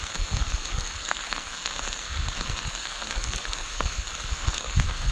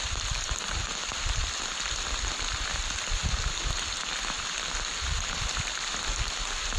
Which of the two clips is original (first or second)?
second